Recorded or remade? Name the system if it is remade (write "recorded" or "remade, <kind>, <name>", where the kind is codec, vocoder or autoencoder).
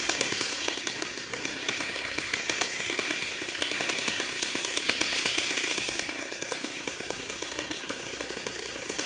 remade, codec, SNAC